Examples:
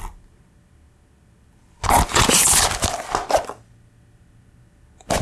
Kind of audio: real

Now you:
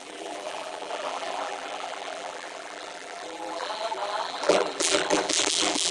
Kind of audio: fake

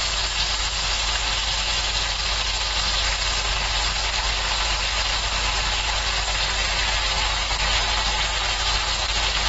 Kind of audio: real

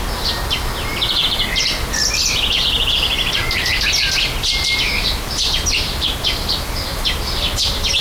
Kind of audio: fake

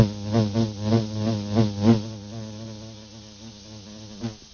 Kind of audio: real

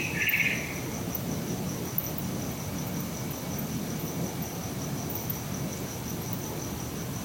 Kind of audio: real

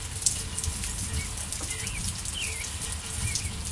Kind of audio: real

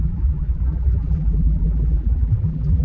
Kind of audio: fake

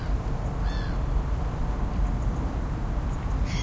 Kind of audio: fake